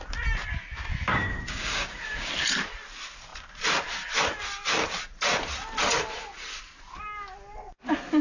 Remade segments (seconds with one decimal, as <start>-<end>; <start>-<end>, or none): 1.1-2.3

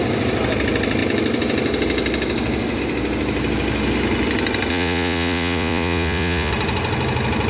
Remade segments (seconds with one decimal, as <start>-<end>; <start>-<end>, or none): 4.7-6.5

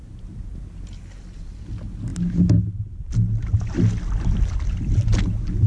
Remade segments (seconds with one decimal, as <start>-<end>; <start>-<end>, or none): none

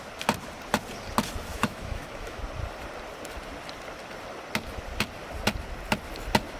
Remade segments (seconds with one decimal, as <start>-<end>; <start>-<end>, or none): 1.5-2.4

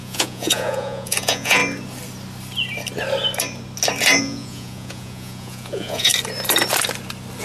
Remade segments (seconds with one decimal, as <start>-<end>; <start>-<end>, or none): 0.0-1.6; 4.2-6.1

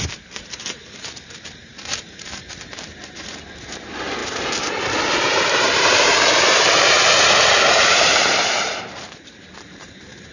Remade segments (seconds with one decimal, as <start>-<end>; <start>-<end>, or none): 0.0-10.3

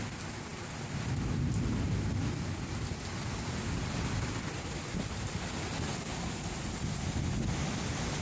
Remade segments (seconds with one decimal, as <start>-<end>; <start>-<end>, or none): none